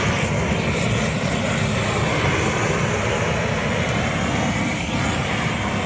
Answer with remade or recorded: recorded